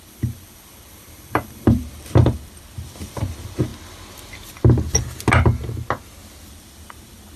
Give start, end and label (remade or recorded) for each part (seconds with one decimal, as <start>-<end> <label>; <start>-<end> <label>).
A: 0.0-3.7 remade; 3.7-6.5 recorded; 6.5-7.4 remade